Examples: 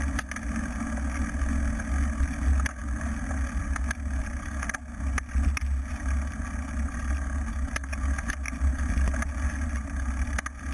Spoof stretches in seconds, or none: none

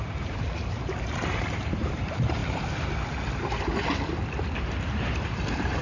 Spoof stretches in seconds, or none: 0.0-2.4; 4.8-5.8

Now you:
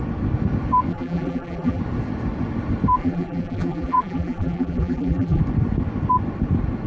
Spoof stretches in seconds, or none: 0.9-1.8; 3.0-5.4